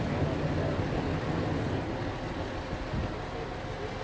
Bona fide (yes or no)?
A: yes